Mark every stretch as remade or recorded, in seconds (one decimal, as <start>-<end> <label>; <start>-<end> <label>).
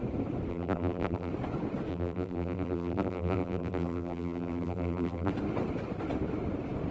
0.0-0.5 recorded; 0.5-1.3 remade; 1.3-1.9 recorded; 1.9-5.3 remade; 5.3-6.9 recorded